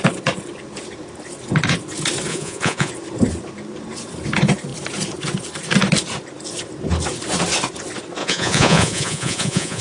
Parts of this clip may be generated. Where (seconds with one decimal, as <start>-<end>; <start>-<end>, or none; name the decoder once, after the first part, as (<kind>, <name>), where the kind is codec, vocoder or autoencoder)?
2.3-2.9 (vocoder, Vocos); 8.2-9.8